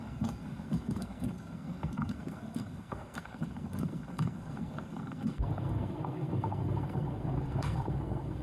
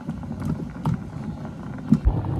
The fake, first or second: first